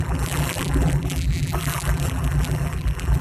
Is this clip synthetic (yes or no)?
yes